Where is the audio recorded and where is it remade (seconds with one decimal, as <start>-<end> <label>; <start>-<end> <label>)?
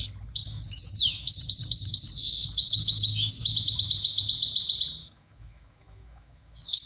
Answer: 0.0-0.4 recorded; 0.4-4.2 remade; 4.2-5.0 recorded; 5.0-6.9 remade